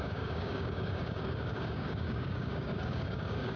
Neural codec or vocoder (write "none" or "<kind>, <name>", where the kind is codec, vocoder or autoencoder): codec, DAC